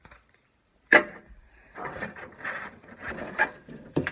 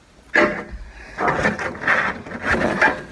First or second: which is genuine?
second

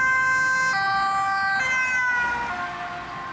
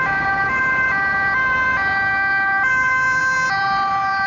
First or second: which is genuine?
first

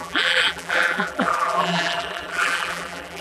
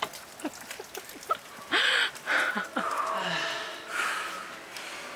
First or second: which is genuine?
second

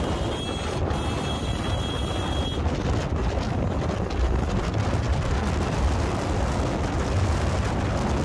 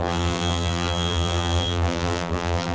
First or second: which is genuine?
first